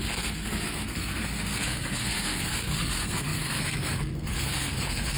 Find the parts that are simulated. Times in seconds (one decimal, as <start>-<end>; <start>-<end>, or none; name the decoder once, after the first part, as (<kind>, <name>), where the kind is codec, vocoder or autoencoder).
0.0-5.2 (codec, SNAC)